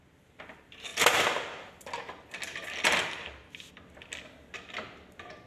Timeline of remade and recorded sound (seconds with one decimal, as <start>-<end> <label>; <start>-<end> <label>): 0.0-5.5 recorded

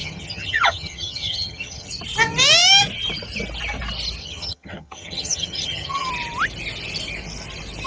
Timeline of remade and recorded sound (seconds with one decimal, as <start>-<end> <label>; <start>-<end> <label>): 0.0-1.9 remade; 1.9-4.2 recorded; 4.2-6.1 remade; 6.1-7.9 recorded

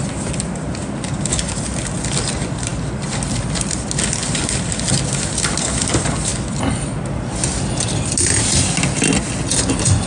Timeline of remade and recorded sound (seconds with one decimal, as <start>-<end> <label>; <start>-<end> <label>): 0.0-10.1 recorded

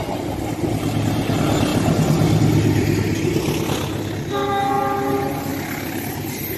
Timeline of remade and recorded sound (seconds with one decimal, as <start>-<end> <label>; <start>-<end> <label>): 0.0-6.6 recorded